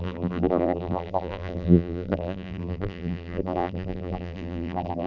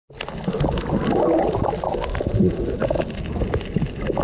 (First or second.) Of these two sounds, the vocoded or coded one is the first